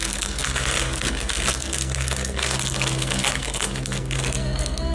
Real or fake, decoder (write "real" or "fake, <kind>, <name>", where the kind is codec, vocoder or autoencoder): fake, codec, SNAC